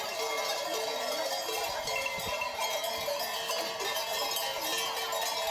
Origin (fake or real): real